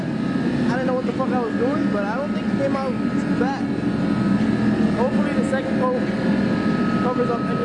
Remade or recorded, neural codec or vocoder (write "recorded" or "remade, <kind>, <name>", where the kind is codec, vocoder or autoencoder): recorded